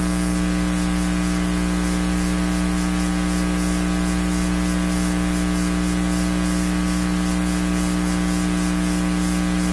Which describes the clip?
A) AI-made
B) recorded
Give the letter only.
B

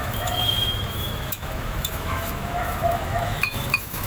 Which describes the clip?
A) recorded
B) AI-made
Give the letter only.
B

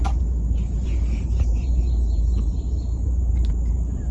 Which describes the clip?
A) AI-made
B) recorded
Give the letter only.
A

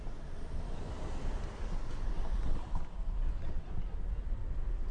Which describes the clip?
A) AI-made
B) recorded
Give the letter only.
B